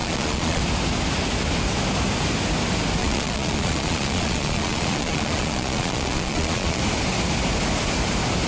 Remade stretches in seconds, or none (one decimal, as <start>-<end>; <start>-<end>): 0.0-0.6; 3.0-6.8